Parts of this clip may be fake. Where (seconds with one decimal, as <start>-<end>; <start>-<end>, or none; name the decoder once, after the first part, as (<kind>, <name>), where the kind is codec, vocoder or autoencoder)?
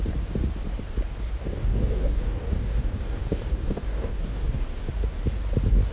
1.4-4.9 (codec, DAC)